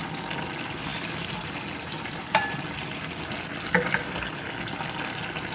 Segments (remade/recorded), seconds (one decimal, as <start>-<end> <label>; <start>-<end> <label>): 0.0-5.5 recorded